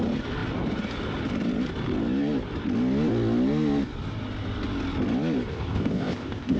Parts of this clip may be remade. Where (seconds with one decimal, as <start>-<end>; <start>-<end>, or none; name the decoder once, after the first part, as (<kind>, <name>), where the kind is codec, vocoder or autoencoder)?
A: 5.5-6.6 (codec, ZipCodec)